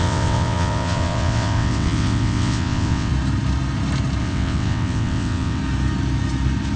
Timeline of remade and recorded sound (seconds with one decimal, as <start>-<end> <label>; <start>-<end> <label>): 0.0-3.1 remade; 3.1-4.2 recorded; 4.2-5.6 remade; 5.6-6.8 recorded